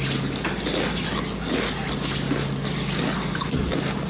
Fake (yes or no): no